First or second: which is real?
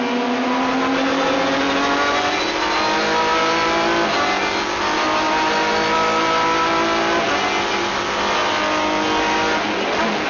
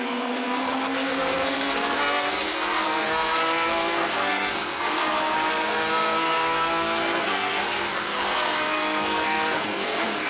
first